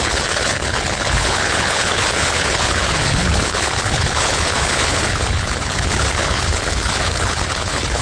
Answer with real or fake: fake